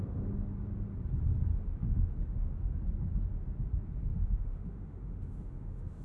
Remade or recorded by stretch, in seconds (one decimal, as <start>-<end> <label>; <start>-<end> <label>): 0.0-1.5 recorded; 1.5-2.8 remade; 2.8-4.1 recorded; 4.1-6.0 remade